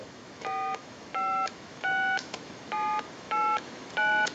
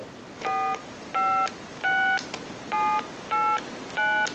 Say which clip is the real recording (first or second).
second